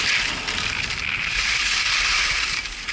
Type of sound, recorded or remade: recorded